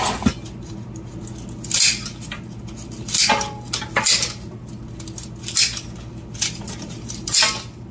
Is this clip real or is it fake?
real